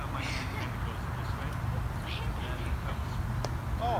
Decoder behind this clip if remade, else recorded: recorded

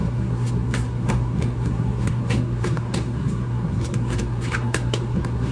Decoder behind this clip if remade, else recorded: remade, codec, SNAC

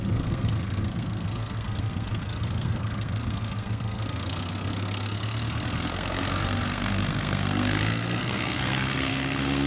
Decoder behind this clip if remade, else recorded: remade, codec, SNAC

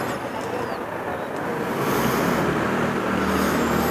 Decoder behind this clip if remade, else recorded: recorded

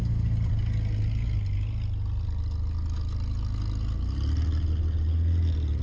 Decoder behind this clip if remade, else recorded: recorded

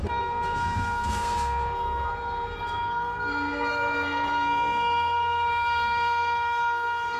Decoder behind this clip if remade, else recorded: remade, codec, SNAC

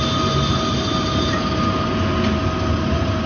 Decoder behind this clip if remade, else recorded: recorded